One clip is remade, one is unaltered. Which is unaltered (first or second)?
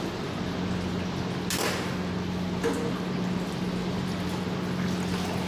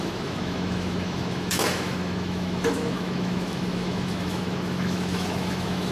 first